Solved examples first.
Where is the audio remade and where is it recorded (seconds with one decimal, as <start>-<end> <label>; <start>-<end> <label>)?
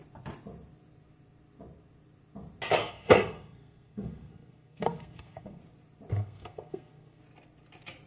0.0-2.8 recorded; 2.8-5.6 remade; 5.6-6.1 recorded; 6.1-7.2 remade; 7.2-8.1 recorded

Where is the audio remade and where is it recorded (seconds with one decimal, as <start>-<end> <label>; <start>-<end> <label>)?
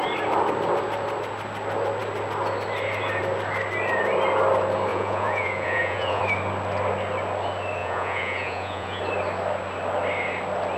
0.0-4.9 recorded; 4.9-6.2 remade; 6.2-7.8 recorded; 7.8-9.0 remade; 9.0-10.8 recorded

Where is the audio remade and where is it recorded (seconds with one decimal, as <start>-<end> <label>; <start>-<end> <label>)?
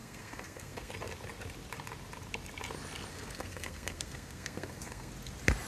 0.0-0.9 remade; 0.9-3.1 recorded; 3.1-5.1 remade; 5.1-5.7 recorded